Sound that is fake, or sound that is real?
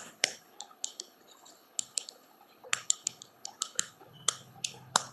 fake